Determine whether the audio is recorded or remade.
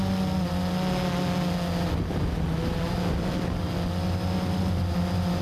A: recorded